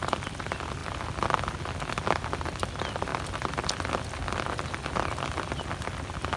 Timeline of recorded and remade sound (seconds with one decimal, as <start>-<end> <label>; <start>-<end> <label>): 0.0-6.4 recorded